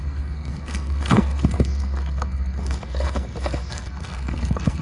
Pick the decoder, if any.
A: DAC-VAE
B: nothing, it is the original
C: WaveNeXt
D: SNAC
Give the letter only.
D